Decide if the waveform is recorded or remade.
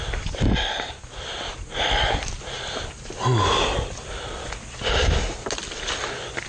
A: recorded